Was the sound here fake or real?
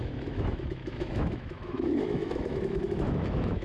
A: fake